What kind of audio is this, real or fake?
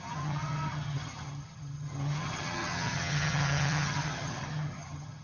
fake